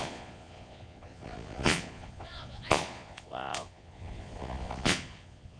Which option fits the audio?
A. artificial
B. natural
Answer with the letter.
A